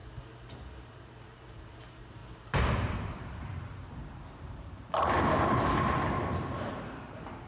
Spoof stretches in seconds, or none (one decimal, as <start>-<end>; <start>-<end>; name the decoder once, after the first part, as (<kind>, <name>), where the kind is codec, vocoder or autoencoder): 0.9-7.5 (vocoder, BigVGAN v2)